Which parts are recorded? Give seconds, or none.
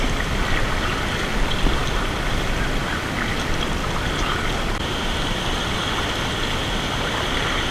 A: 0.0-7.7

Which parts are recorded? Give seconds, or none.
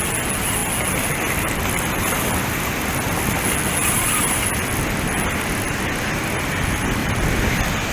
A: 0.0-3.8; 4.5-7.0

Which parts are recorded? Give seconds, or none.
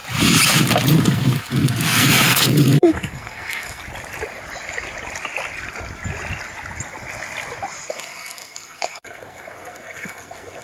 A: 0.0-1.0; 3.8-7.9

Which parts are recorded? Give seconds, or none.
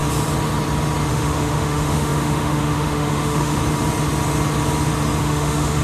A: 0.0-1.1; 3.6-5.2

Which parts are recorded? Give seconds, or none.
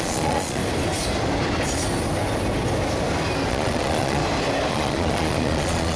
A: 0.6-3.5; 4.2-4.7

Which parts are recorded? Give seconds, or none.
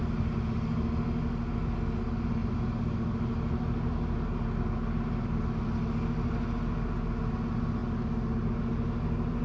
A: 0.0-9.4